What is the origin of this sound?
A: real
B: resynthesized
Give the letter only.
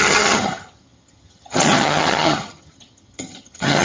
B